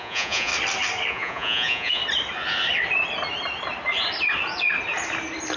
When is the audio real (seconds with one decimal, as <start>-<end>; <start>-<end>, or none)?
0.5-1.1; 2.0-5.6